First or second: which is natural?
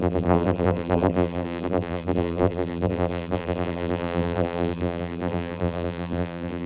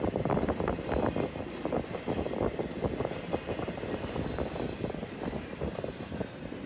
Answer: second